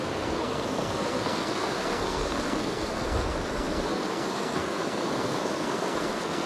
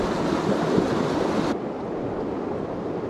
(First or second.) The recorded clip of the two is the second